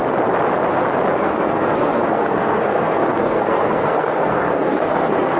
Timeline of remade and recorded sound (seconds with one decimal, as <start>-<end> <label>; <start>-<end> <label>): 0.0-1.2 recorded; 1.2-5.4 remade